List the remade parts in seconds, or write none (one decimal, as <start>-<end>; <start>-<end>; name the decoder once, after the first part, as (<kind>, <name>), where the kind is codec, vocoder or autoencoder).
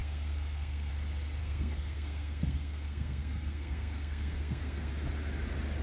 0.0-0.9 (codec, SNAC); 1.4-4.9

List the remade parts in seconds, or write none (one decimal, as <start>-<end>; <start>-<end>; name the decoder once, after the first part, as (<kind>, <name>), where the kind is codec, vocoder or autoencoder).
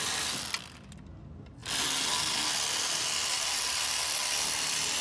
none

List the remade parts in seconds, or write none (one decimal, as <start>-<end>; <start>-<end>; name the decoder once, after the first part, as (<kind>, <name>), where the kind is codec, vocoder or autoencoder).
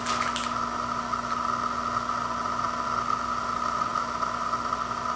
none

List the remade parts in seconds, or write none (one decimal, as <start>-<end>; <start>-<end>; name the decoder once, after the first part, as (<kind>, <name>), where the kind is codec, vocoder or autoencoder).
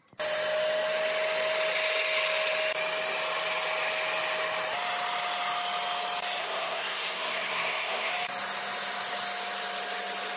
6.4-8.1 (codec, SNAC)